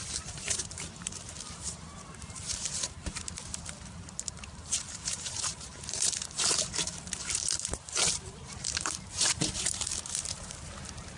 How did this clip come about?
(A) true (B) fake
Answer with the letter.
B